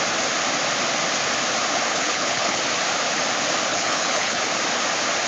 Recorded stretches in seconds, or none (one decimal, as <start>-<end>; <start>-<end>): 0.0-1.9; 2.6-3.7; 4.4-5.3